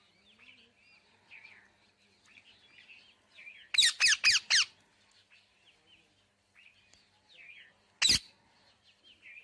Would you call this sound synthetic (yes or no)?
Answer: no